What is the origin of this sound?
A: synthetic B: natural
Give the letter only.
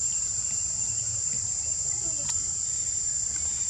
A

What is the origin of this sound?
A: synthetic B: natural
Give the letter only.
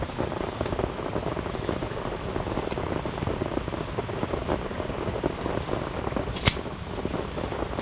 A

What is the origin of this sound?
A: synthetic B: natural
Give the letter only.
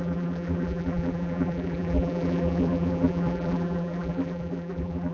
A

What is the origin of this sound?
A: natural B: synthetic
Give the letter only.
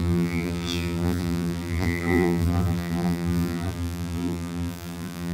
B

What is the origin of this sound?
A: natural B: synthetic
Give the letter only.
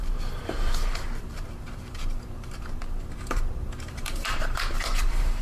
B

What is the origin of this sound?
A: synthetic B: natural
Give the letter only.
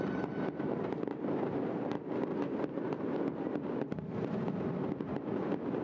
B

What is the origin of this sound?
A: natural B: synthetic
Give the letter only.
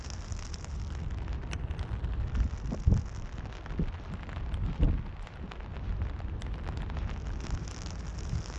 A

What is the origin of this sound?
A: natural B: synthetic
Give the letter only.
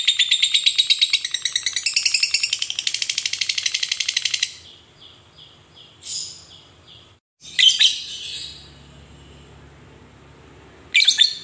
A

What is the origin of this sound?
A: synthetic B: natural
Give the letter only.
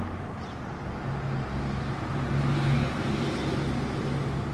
B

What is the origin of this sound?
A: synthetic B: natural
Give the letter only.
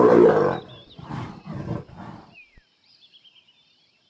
A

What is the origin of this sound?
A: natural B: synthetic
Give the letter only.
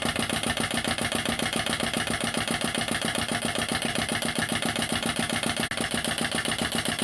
A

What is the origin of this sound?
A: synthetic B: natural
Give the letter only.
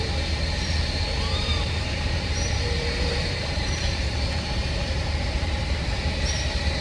A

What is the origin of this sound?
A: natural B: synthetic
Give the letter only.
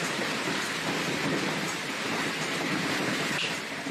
B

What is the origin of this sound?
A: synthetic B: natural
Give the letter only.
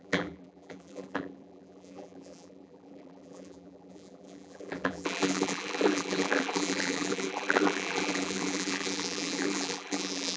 A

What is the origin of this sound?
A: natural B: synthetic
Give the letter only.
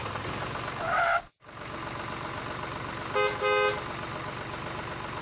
A